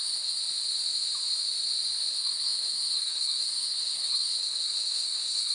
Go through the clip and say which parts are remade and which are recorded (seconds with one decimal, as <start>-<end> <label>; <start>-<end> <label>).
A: 0.0-0.4 remade; 0.4-2.1 recorded; 2.1-5.5 remade